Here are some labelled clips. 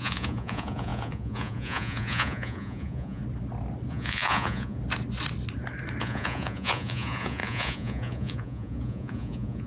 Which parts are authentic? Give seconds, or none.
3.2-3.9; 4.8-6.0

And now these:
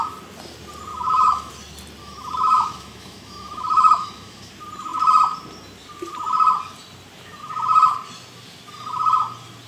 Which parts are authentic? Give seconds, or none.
0.0-0.9; 1.5-2.0; 4.5-9.7